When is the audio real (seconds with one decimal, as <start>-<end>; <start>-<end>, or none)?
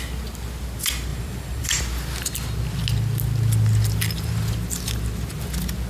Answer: 0.0-1.1; 1.8-5.9